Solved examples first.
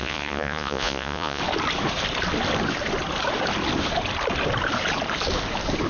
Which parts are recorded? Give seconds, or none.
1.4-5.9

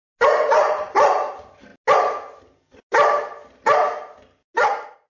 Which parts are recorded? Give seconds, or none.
0.0-5.1

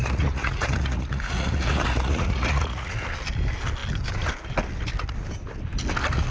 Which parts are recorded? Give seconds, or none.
2.9-6.3